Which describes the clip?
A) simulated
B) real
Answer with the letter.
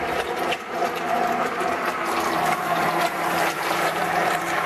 A